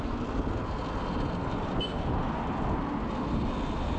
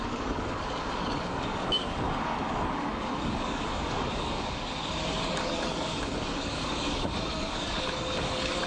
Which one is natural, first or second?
first